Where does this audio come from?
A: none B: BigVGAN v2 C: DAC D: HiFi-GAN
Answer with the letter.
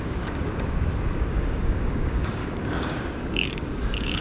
C